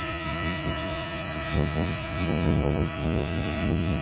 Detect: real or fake fake